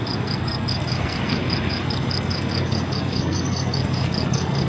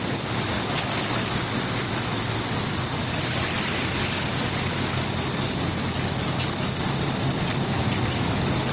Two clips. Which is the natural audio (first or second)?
second